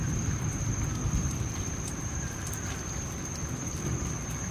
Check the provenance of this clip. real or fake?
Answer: fake